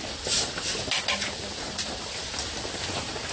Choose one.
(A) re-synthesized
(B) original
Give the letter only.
B